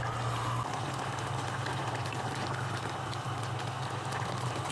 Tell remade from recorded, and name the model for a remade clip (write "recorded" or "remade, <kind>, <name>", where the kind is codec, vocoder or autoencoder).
recorded